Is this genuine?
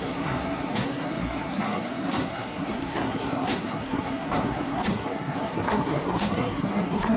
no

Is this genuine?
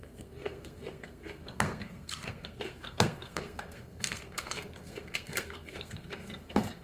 no